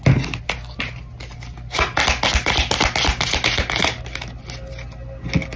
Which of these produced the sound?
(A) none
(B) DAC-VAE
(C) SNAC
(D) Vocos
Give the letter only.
A